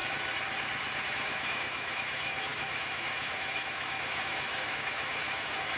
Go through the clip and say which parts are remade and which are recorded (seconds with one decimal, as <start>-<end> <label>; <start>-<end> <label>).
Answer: 0.0-1.1 recorded; 1.1-5.8 remade

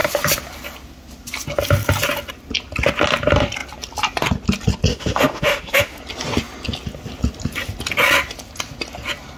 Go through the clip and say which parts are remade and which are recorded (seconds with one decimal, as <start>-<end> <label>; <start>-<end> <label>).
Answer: 0.0-4.9 recorded; 4.9-6.0 remade; 6.0-9.4 recorded

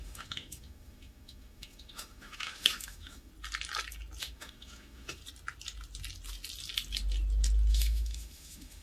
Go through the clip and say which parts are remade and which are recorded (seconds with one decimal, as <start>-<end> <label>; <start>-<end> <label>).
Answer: 0.0-3.3 remade; 3.3-4.2 recorded; 4.2-5.2 remade; 5.2-7.7 recorded; 7.7-8.8 remade

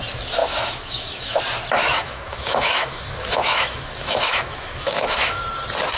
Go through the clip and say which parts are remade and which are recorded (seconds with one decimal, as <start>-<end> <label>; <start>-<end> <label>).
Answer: 0.0-0.4 recorded; 0.4-1.4 remade; 1.4-1.8 recorded; 1.8-5.4 remade; 5.4-6.0 recorded

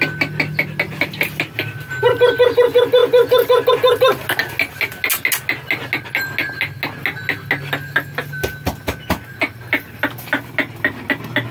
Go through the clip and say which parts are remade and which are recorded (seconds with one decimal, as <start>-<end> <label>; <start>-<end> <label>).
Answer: 0.0-11.5 recorded

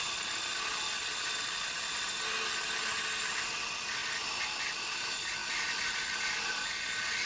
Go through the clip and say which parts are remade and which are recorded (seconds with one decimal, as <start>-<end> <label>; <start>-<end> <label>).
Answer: 0.0-7.3 recorded

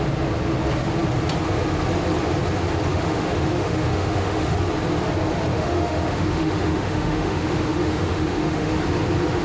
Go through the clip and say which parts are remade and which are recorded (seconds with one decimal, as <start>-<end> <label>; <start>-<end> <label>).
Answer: 0.0-2.9 recorded; 2.9-4.6 remade; 4.6-5.5 recorded; 5.5-8.7 remade; 8.7-9.4 recorded